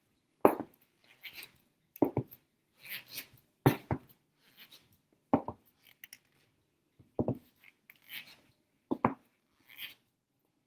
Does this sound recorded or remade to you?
recorded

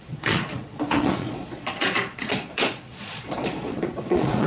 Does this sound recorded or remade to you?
remade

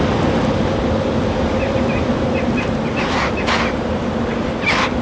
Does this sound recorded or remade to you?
recorded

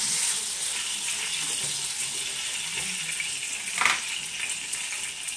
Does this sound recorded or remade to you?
recorded